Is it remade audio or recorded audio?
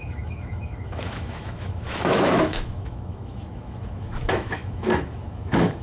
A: remade